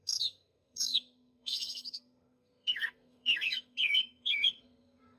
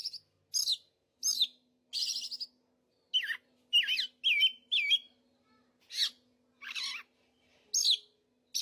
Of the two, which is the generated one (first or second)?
first